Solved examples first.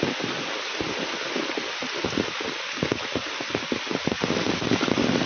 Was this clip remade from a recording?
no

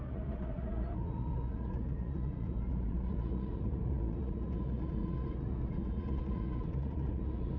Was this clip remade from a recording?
yes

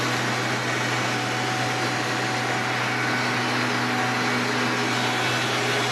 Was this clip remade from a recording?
no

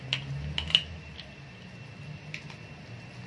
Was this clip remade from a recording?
no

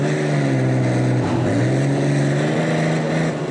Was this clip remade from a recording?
no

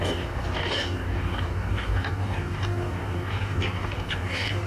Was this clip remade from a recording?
yes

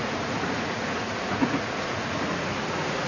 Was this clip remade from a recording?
yes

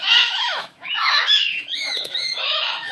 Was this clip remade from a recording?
yes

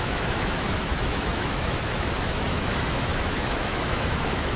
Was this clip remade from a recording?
yes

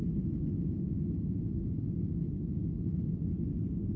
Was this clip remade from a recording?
no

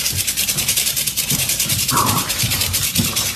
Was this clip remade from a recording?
yes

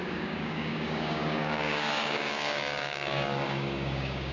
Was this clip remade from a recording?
yes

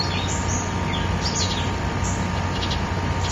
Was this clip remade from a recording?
no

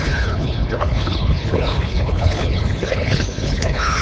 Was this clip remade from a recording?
yes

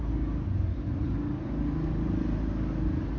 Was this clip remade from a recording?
no